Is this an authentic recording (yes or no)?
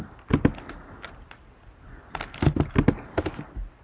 yes